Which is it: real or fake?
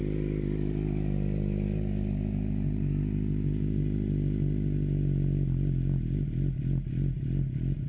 real